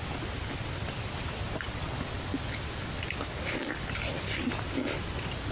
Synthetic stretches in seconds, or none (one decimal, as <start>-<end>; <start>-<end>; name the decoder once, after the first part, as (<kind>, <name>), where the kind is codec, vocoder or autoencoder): none